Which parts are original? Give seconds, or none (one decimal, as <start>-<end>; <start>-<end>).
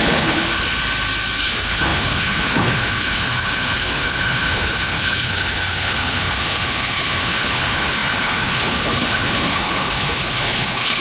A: 0.5-1.4